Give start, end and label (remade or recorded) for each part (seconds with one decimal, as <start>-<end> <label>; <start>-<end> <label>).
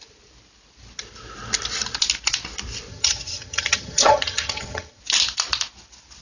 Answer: 0.0-2.9 recorded; 2.9-5.0 remade; 5.0-6.2 recorded